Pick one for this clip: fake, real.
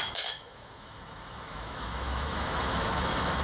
fake